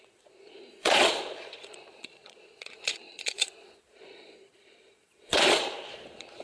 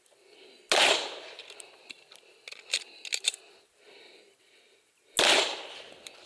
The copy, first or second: first